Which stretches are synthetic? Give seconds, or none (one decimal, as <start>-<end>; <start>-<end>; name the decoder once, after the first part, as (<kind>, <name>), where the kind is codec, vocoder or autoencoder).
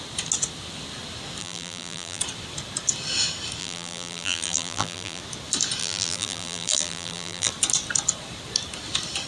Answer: 1.4-2.2 (vocoder, BigVGAN v2); 3.6-5.2; 5.8-7.5